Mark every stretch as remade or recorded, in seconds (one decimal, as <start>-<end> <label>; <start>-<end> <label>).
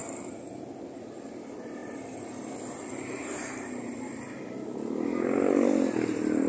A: 0.0-6.5 recorded